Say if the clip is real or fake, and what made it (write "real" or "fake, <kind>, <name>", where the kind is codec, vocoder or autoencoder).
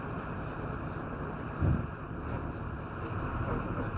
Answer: fake, vocoder, BigVGAN v2